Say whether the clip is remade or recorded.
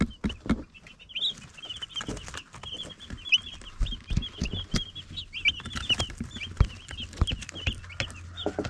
recorded